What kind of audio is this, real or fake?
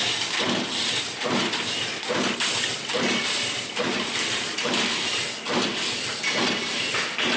real